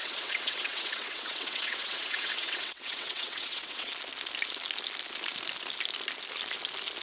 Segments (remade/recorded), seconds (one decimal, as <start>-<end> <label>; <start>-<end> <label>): 0.0-3.9 remade; 3.9-7.0 recorded